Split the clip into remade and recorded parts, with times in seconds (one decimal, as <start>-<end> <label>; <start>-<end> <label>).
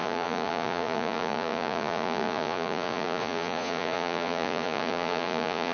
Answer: 0.0-5.7 remade